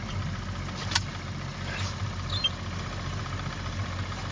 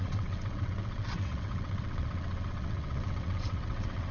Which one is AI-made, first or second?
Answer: second